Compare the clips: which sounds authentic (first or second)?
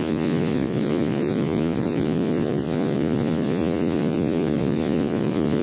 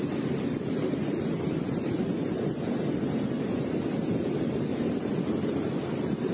second